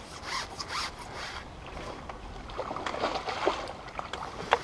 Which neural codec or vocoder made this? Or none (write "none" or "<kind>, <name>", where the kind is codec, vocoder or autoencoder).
none